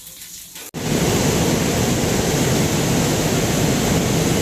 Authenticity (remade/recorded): recorded